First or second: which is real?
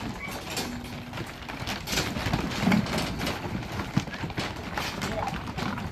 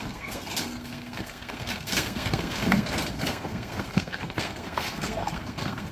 first